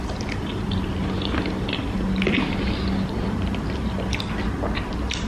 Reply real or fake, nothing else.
fake